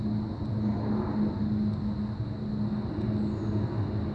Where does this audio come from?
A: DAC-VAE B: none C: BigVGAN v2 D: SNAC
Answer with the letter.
B